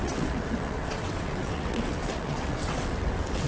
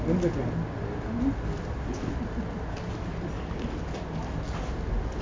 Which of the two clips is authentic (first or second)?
second